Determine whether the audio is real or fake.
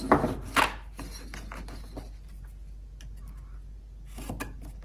real